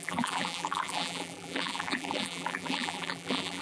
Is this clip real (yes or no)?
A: no